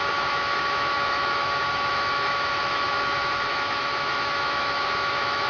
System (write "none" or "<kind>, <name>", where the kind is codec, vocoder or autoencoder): autoencoder, DAC-VAE